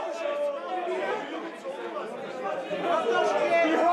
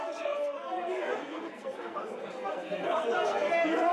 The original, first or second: first